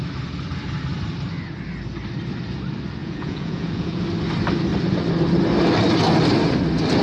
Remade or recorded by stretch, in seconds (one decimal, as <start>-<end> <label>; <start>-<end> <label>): 0.0-3.0 recorded; 3.0-4.0 remade; 4.0-7.0 recorded

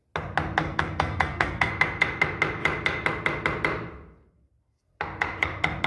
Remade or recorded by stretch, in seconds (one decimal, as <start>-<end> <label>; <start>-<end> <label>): 0.0-0.6 recorded; 0.6-1.7 remade; 1.7-5.9 recorded

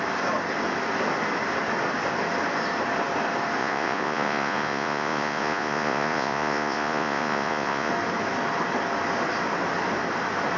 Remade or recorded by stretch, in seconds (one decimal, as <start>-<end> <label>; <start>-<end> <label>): 0.0-3.6 recorded; 3.6-7.9 remade; 7.9-10.6 recorded

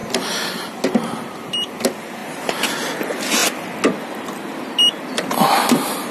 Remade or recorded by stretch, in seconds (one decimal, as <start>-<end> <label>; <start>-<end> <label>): 0.0-2.2 recorded; 2.2-2.7 remade; 2.7-6.1 recorded